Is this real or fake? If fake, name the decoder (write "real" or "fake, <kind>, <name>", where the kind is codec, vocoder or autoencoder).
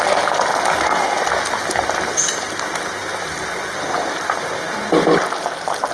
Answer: real